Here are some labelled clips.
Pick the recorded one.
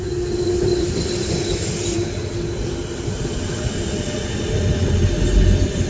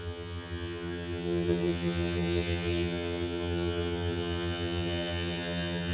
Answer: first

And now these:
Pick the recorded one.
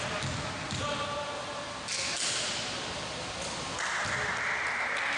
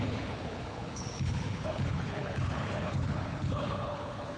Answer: first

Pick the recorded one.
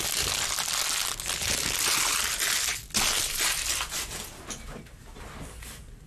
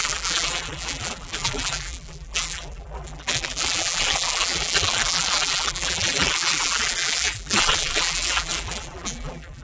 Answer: first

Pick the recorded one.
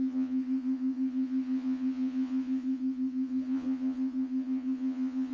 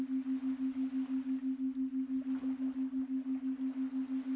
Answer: second